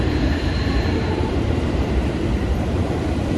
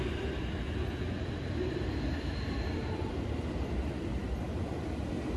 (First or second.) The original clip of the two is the second